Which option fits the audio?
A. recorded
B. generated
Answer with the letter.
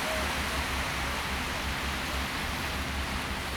A